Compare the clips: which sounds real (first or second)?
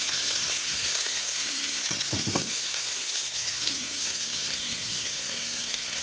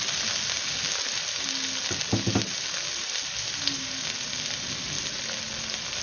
second